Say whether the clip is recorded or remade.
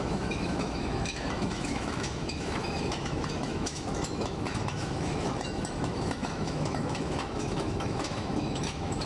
remade